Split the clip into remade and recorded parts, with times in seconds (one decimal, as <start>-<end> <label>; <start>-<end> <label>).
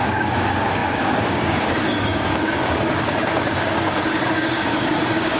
0.0-5.4 remade